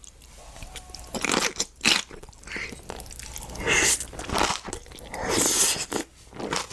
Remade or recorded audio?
recorded